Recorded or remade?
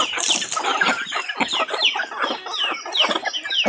recorded